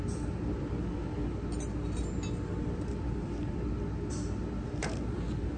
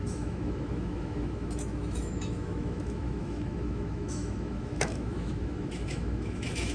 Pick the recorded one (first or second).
first